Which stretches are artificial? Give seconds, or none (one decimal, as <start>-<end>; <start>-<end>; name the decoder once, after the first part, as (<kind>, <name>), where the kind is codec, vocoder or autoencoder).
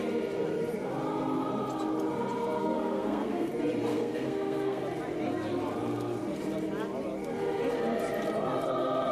2.6-3.5 (codec, SNAC); 3.9-4.8